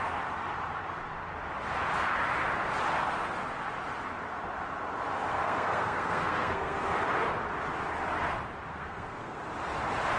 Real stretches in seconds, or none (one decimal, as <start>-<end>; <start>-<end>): 0.0-5.3; 7.0-8.7; 9.4-10.2